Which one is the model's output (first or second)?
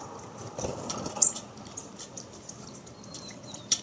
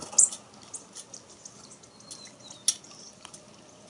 first